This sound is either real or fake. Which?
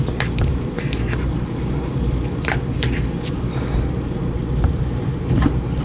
fake